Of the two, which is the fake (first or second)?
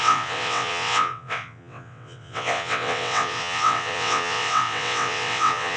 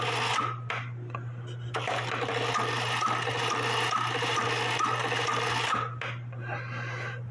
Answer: first